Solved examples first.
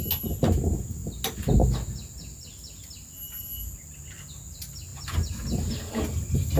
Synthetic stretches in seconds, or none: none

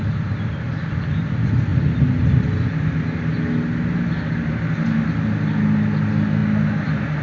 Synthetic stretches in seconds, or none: none

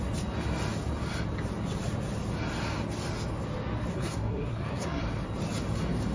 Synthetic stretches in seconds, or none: 3.9-5.0 (codec, SNAC)

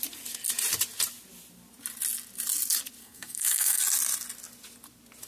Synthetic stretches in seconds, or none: 3.0-3.8 (codec, SNAC)